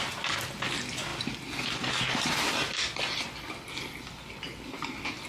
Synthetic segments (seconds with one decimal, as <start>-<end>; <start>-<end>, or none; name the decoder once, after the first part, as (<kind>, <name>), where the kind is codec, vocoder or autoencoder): none